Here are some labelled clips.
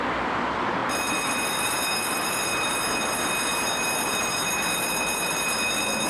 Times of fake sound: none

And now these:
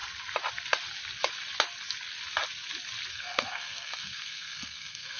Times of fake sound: 3.1-5.2